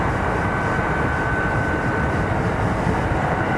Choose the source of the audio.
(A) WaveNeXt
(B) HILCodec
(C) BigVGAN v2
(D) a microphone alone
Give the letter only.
D